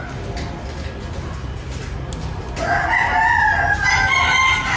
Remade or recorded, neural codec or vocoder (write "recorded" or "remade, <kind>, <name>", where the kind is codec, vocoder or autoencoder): recorded